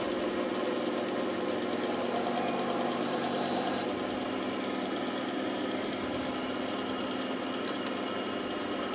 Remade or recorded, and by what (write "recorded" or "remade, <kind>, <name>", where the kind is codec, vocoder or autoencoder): recorded